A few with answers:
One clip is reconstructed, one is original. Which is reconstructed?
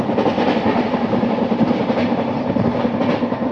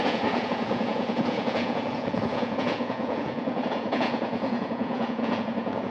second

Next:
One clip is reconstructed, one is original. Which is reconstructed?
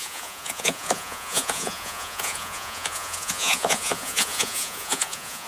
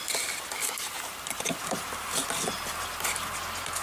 first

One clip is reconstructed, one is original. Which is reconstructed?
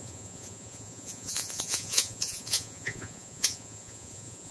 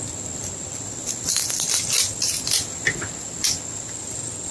first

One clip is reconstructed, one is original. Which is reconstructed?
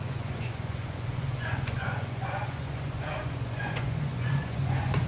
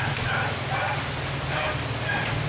first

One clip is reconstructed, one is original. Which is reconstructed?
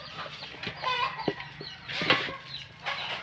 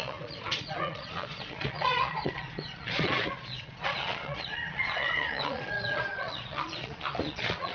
second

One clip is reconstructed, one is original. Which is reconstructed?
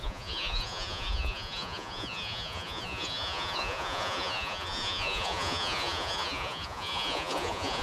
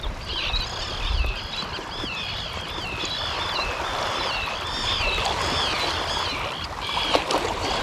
first